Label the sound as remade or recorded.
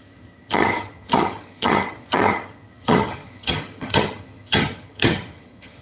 remade